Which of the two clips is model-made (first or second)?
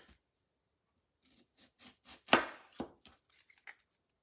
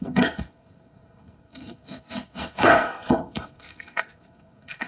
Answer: second